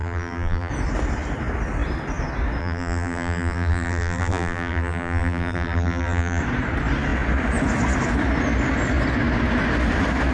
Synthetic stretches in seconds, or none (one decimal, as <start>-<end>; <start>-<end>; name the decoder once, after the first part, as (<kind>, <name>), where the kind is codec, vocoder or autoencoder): 0.0-0.7 (vocoder, BigVGAN v2); 2.6-6.4